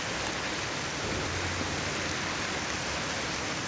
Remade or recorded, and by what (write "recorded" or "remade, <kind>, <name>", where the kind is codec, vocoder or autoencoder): recorded